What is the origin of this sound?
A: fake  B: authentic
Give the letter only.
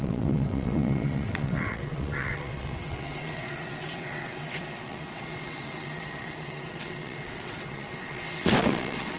A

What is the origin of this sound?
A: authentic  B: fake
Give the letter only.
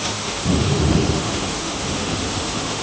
B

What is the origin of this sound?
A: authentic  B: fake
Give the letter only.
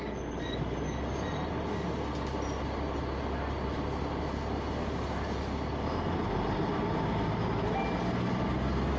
A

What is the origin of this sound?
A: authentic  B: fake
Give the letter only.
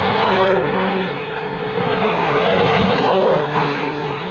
B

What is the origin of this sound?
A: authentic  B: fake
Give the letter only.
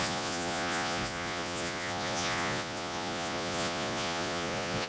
B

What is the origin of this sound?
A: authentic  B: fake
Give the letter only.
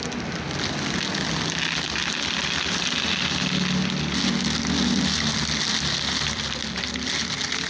A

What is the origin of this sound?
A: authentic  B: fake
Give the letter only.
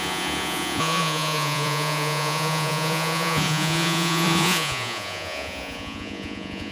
B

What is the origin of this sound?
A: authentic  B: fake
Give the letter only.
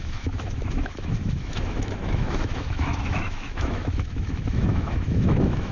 B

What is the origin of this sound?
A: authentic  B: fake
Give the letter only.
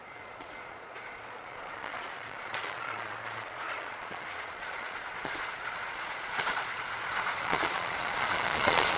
B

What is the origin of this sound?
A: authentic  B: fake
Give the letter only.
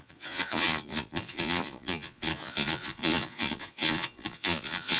B